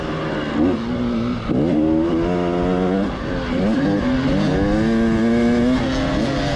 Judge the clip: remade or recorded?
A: recorded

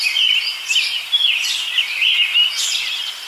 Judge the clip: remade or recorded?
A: recorded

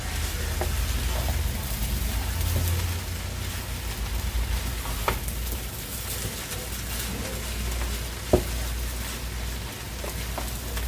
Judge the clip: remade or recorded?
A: recorded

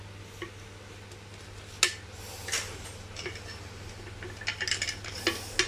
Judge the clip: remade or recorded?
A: recorded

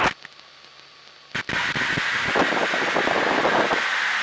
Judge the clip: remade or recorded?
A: recorded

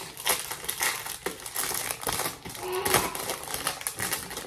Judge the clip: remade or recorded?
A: recorded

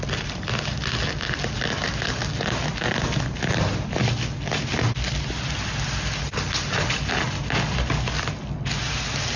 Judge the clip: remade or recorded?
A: recorded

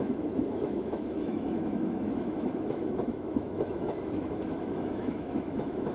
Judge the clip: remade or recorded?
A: remade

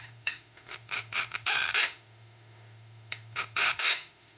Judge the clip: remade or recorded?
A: remade